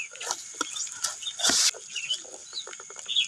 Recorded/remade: recorded